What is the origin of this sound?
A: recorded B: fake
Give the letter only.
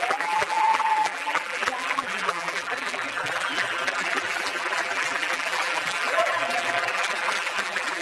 B